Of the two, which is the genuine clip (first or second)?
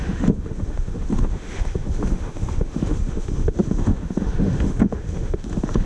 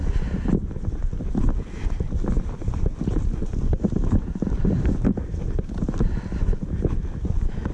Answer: second